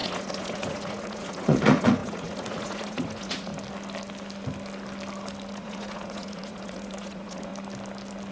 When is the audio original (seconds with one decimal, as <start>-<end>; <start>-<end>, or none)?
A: 3.5-5.5; 7.5-8.3